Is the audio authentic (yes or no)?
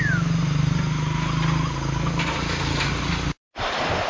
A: yes